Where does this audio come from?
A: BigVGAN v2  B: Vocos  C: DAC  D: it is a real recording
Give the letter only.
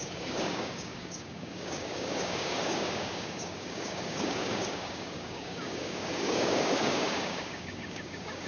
C